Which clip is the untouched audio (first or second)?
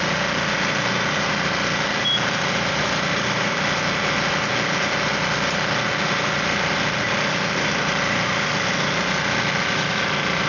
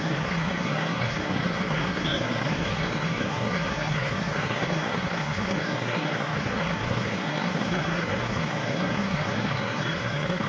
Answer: first